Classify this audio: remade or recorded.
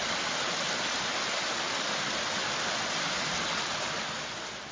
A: recorded